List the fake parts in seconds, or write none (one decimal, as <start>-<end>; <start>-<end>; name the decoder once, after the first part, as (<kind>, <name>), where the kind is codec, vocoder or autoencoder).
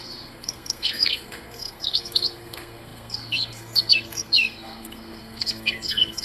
0.0-6.2 (codec, SNAC)